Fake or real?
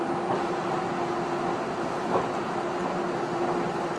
real